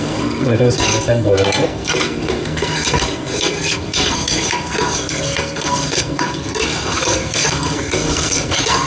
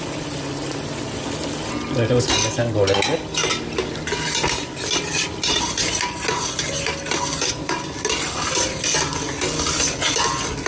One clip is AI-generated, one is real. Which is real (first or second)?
second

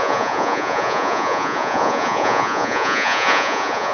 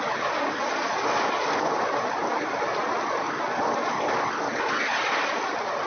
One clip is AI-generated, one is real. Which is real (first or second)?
second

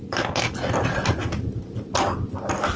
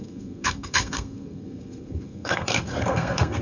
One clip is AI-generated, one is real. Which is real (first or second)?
first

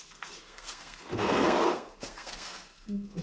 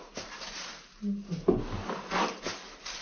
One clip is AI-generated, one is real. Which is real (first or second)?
second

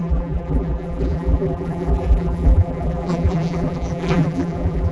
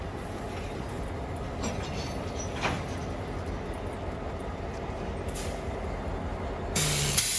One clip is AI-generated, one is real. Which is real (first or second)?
second